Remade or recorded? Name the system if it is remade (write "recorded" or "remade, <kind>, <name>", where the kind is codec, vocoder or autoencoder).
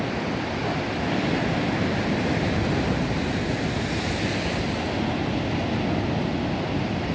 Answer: recorded